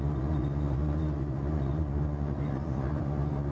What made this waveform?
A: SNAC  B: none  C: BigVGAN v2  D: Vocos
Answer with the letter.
D